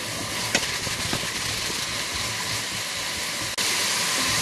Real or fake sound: real